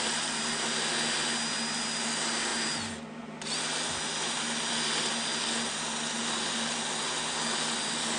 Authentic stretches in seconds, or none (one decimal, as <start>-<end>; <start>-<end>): 0.0-8.2